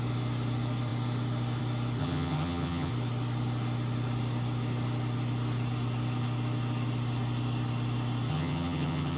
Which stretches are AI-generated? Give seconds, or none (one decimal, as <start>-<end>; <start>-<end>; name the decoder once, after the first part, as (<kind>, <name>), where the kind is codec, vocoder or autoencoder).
2.0-2.9 (vocoder, HiFi-GAN); 8.3-9.2